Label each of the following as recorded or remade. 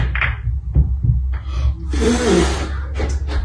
recorded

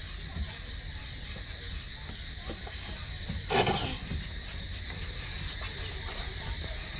recorded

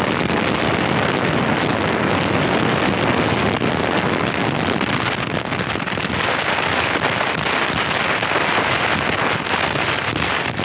recorded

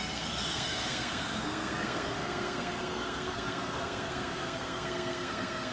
remade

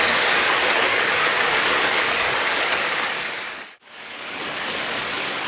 remade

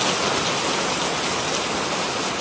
recorded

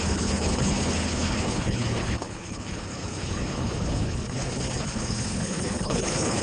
remade